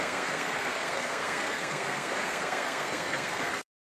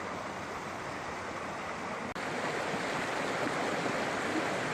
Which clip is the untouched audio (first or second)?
second